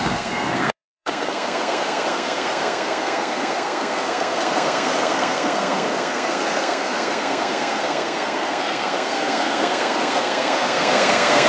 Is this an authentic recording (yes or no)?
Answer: no